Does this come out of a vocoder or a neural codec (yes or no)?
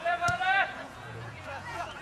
yes